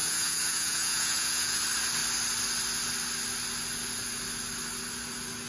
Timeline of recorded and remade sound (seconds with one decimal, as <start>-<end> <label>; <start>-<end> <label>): 0.0-1.6 remade; 1.6-5.5 recorded